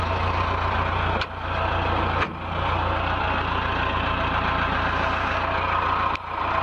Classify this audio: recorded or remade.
recorded